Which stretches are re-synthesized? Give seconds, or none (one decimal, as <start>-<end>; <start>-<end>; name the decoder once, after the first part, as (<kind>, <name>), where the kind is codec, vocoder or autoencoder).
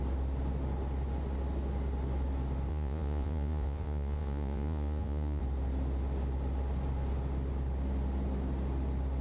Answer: 2.7-5.4 (vocoder, Vocos)